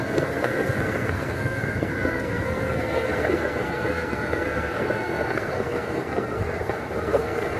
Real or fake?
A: fake